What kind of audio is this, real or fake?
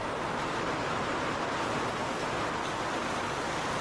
real